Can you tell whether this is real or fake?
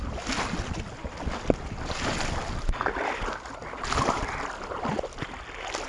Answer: real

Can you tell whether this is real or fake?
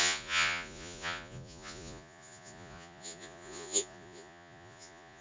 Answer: fake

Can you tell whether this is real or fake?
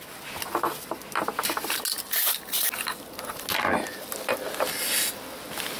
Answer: real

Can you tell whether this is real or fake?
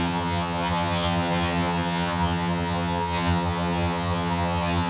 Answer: fake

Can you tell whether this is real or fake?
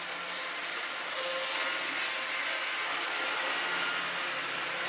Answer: real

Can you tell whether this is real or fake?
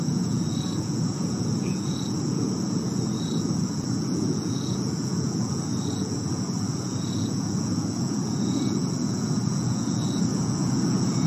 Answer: fake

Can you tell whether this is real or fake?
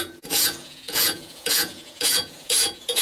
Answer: fake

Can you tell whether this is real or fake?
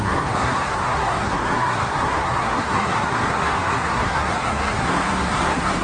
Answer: fake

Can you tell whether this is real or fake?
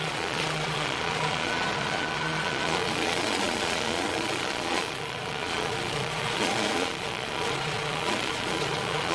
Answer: fake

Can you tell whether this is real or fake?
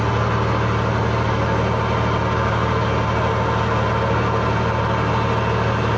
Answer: real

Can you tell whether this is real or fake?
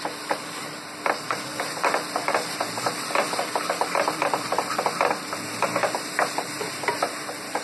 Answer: fake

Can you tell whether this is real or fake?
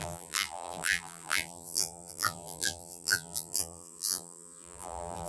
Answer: fake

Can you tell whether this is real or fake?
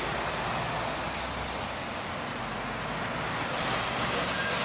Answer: real